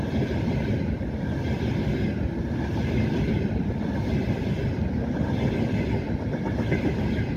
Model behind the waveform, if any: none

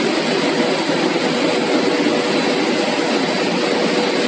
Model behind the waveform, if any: none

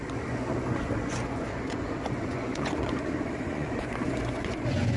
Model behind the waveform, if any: vocoder, Vocos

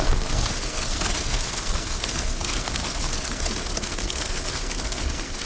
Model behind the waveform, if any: codec, SNAC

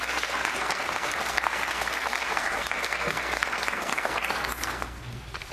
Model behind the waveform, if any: codec, SNAC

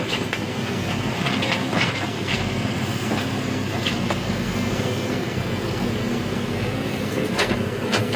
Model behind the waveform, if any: codec, SNAC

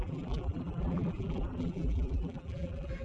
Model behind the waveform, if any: vocoder, BigVGAN v2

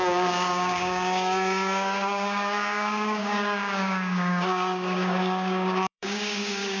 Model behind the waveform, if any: codec, DAC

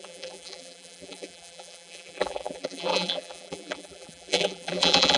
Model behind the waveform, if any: vocoder, BigVGAN v2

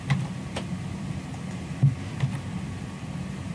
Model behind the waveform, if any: none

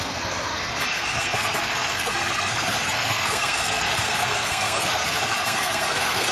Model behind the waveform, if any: codec, SNAC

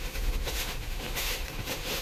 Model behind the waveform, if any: autoencoder, DAC-VAE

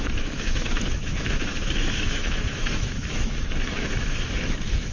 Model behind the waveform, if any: autoencoder, DAC-VAE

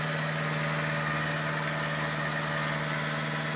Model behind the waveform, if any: none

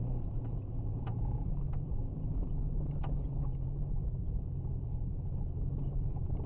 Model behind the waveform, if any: vocoder, BigVGAN v2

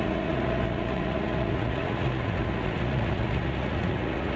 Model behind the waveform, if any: vocoder, Vocos